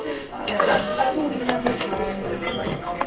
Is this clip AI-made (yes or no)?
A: yes